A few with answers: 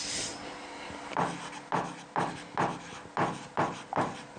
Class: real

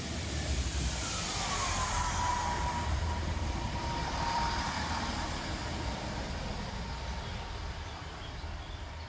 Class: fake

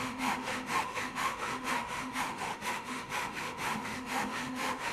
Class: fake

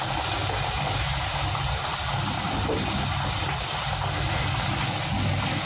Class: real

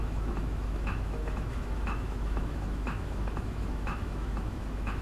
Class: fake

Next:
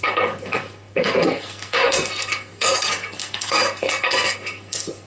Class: fake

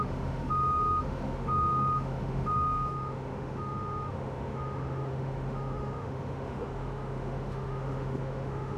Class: fake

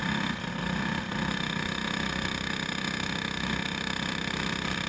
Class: real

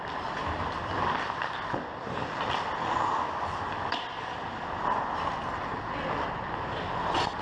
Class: real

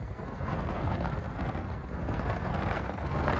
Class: fake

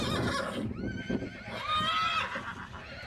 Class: real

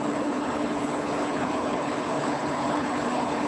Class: fake